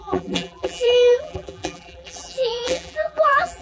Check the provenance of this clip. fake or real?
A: fake